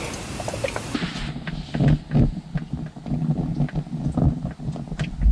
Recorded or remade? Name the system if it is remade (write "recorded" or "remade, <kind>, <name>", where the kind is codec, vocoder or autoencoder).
recorded